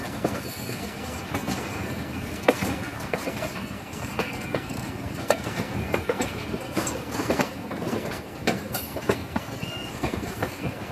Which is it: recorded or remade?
remade